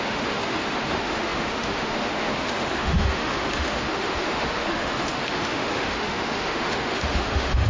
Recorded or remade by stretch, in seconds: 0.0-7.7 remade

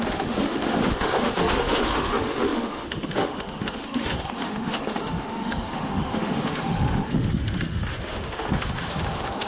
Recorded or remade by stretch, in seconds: 0.0-9.5 remade

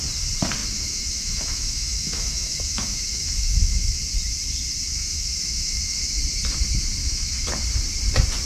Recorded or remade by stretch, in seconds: 0.0-0.6 recorded; 0.6-4.0 remade; 4.0-4.9 recorded; 4.9-6.2 remade; 6.2-7.0 recorded; 7.0-7.5 remade; 7.5-8.5 recorded

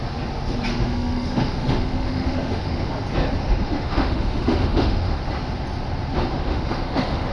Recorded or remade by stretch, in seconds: 0.0-0.7 recorded; 0.7-2.9 remade; 2.9-3.4 recorded; 3.4-5.2 remade; 5.2-6.3 recorded; 6.3-7.3 remade

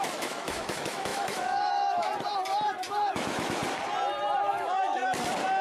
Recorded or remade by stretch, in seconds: 0.0-2.1 remade; 2.1-3.1 recorded; 3.1-3.6 remade; 3.6-4.5 recorded; 4.5-5.0 remade; 5.0-5.6 recorded

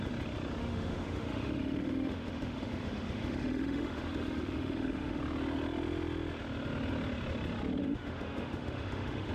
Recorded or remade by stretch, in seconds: 0.0-0.6 recorded; 0.6-5.2 remade; 5.2-7.8 recorded; 7.8-9.3 remade